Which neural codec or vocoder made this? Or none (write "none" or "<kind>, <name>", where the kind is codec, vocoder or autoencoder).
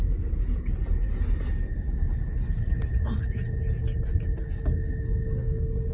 none